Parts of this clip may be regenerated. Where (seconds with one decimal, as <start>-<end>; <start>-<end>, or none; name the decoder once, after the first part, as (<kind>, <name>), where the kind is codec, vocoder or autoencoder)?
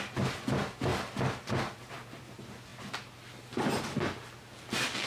none